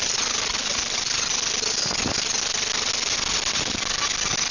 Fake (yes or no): no